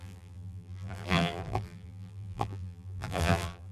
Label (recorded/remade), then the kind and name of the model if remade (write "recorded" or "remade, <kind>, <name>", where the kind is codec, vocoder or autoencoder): remade, vocoder, BigVGAN v2